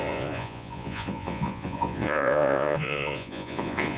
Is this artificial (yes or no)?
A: yes